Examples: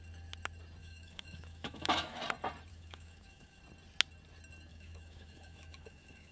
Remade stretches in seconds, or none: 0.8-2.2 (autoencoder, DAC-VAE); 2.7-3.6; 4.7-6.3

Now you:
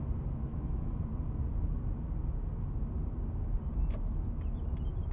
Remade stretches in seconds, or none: 0.5-1.0 (autoencoder, DAC-VAE)

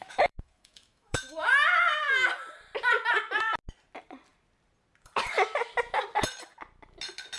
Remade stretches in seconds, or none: 0.0-1.5 (autoencoder, DAC-VAE)

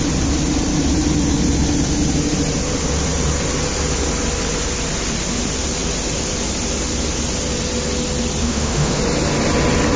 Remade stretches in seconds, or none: 8.4-9.0 (autoencoder, DAC-VAE)

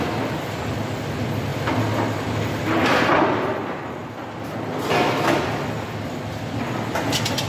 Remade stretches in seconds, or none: none

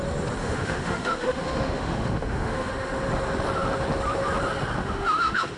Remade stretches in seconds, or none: 0.4-2.7 (autoencoder, DAC-VAE); 4.8-5.6

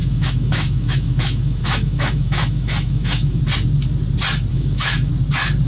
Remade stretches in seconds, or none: 0.0-3.4 (autoencoder, DAC-VAE); 4.5-5.1

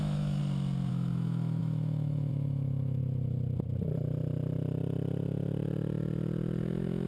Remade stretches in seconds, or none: 0.0-0.4 (autoencoder, DAC-VAE); 0.9-3.0; 6.6-7.1